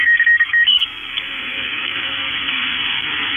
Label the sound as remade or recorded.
remade